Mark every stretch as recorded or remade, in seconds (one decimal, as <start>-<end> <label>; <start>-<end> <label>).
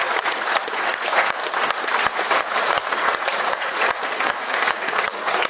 0.0-1.4 remade; 1.4-2.2 recorded; 2.2-5.5 remade